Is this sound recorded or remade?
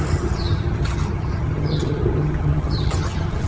remade